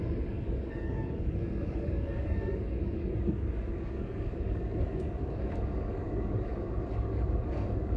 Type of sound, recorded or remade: remade